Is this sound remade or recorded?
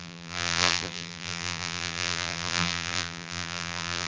remade